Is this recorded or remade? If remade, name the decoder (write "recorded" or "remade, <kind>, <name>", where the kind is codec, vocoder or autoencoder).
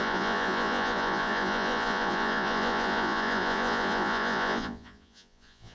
remade, vocoder, Vocos